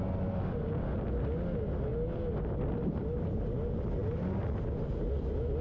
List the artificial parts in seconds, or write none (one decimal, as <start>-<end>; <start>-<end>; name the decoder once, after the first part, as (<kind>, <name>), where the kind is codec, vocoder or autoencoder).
none